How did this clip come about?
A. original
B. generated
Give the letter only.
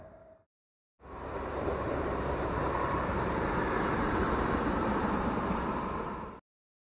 B